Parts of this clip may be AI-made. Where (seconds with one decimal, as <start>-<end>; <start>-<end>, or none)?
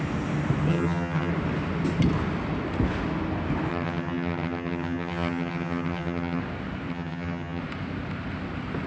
0.7-1.3; 3.7-6.4; 6.9-7.6